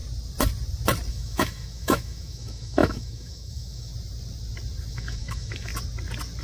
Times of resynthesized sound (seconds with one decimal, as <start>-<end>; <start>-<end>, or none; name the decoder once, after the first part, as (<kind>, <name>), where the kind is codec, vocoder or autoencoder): 1.1-3.9 (autoencoder, DAC-VAE); 4.9-5.7